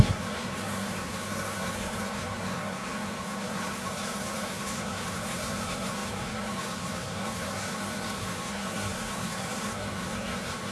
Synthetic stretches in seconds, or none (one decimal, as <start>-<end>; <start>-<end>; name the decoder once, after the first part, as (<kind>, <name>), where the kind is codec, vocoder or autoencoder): 0.0-10.7 (codec, SNAC)